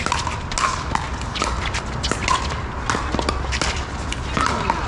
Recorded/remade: recorded